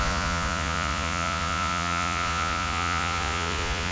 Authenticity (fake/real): fake